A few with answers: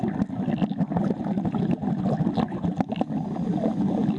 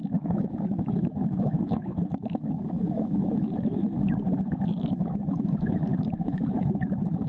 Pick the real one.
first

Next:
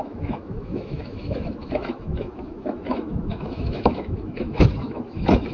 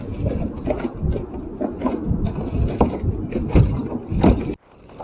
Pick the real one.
second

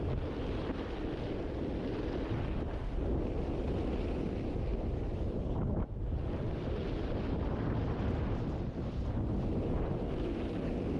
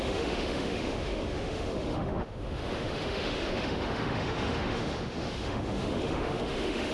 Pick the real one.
first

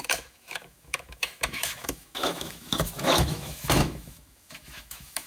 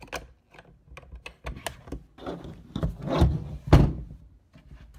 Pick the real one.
second